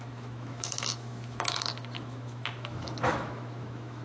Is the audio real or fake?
fake